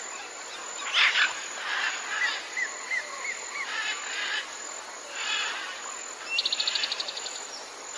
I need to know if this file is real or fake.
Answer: real